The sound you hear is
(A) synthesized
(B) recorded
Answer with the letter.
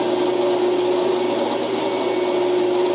B